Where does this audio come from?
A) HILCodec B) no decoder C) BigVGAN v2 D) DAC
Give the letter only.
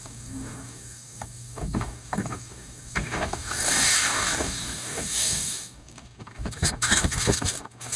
D